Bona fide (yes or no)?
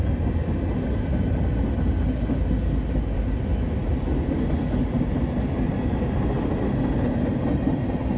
yes